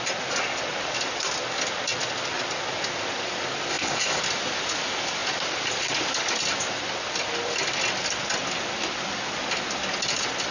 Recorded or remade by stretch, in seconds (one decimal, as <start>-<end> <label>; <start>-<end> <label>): 0.0-3.7 recorded; 3.7-4.2 remade; 4.2-10.5 recorded